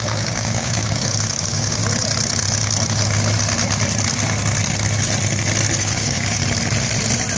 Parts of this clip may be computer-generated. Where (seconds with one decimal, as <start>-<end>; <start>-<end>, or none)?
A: 0.0-1.8; 5.8-6.4

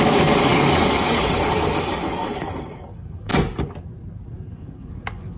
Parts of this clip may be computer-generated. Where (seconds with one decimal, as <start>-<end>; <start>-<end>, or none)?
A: 0.0-3.3; 4.5-5.4

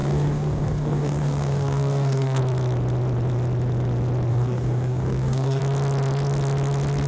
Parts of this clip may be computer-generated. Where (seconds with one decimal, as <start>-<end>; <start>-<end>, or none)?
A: 0.0-2.4; 4.3-5.6

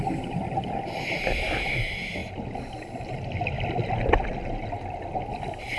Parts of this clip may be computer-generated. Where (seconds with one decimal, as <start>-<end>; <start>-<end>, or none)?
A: none

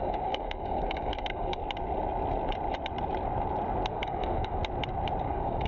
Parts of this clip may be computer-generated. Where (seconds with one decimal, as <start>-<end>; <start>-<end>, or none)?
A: 0.0-1.6; 3.9-4.6; 5.2-5.7